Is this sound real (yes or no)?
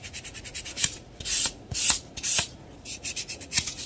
no